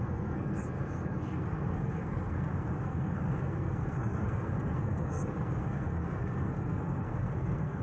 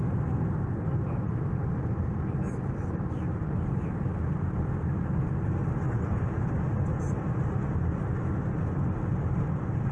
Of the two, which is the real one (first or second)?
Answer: second